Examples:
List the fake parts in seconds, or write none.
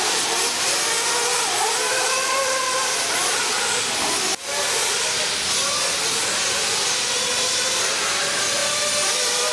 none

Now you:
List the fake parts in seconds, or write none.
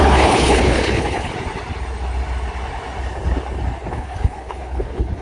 0.0-1.3 (codec, HILCodec); 3.9-5.2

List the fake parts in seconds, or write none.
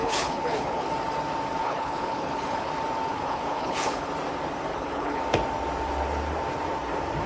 0.0-0.9 (codec, HILCodec); 1.6-2.7; 3.1-4.1; 4.7-5.2